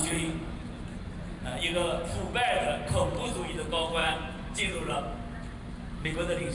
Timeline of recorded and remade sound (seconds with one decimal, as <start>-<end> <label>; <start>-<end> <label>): 0.0-4.0 recorded; 4.0-5.0 remade; 5.0-6.5 recorded